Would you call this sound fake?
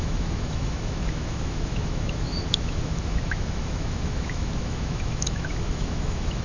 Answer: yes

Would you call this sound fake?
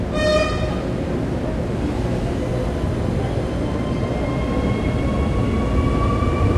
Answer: no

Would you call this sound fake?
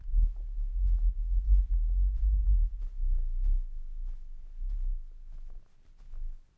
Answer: no